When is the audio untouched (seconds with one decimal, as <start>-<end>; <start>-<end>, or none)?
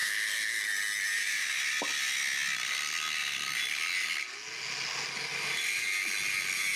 0.6-6.8